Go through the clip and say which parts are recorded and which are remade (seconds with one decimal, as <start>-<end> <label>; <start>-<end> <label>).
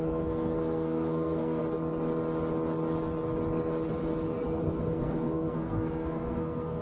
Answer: 0.0-1.6 remade; 1.6-4.8 recorded; 4.8-6.8 remade